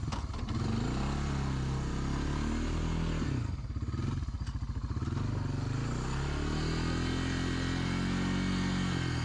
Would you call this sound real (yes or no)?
yes